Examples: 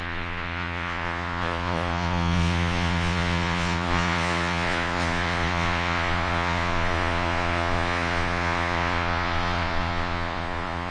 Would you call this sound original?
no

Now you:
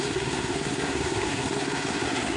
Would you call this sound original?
no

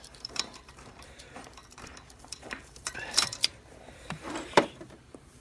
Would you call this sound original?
no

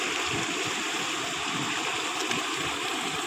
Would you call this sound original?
yes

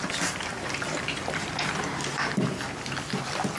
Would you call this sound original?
yes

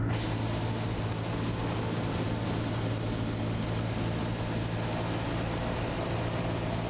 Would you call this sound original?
yes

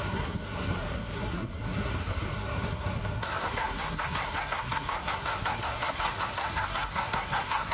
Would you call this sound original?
no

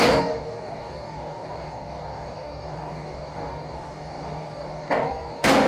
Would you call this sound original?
no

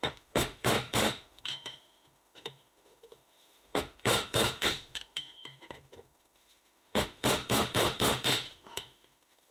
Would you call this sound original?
no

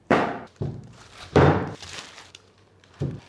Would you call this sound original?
no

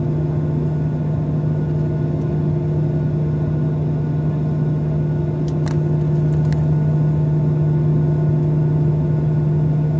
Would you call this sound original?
yes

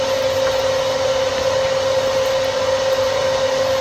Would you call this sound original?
yes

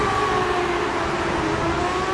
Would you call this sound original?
yes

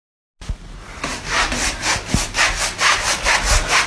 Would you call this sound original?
yes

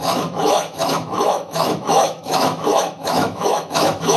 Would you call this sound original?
no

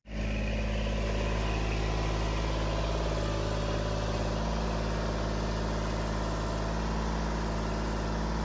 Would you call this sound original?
yes